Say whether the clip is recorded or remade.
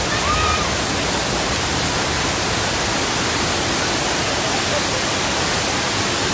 recorded